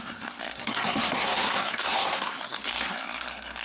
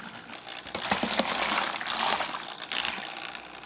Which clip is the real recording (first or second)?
second